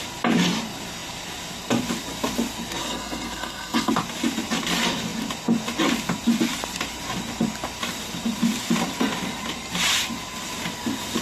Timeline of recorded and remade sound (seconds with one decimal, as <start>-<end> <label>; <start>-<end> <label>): 0.0-2.8 recorded; 2.8-3.9 remade; 3.9-11.2 recorded